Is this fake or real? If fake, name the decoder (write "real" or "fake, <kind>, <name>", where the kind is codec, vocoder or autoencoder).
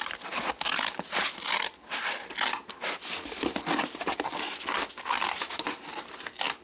real